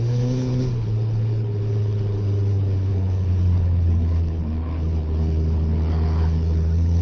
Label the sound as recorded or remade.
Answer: remade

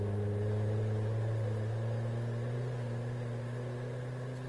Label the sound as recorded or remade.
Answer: recorded